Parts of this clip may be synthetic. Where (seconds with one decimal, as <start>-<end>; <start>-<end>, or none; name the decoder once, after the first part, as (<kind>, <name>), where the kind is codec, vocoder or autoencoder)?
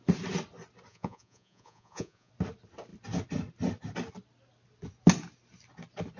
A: 0.9-2.3 (vocoder, Vocos)